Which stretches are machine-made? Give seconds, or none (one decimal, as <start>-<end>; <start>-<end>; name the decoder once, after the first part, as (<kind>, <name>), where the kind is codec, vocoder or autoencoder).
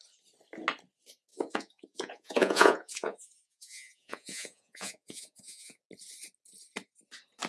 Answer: 1.3-5.8 (vocoder, Vocos)